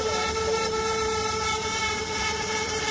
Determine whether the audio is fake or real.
fake